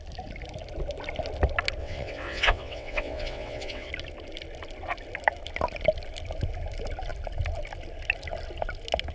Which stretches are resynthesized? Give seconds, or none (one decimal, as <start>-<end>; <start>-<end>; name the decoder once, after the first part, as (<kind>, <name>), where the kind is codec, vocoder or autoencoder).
1.8-3.9 (vocoder, WaveNeXt)